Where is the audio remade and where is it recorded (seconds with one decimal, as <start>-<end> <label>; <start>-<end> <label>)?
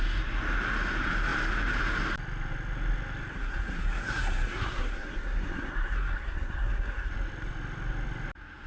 0.0-3.3 recorded; 3.3-7.1 remade; 7.1-8.7 recorded